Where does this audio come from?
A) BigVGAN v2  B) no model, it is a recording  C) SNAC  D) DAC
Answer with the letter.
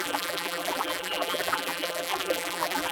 A